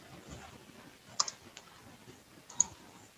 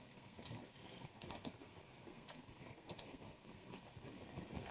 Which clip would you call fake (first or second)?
second